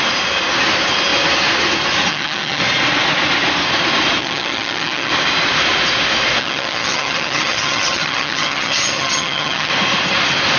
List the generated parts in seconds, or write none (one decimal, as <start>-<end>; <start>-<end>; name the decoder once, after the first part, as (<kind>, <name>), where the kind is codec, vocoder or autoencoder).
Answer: 2.1-2.6 (vocoder, HiFi-GAN); 4.2-5.1; 6.4-9.7